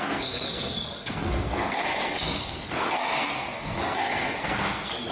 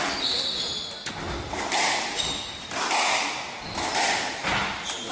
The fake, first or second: first